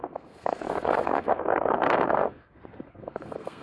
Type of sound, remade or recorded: remade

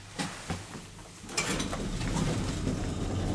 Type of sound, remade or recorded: recorded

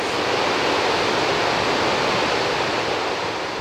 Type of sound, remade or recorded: recorded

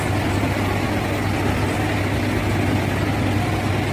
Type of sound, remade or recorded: recorded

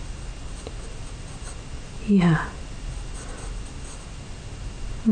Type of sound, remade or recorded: recorded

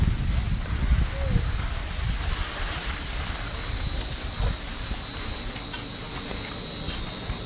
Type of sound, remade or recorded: recorded